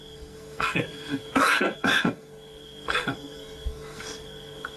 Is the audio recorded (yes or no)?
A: no